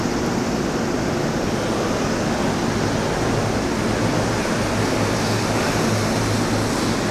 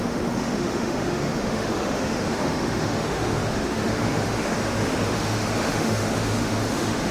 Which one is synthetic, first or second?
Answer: second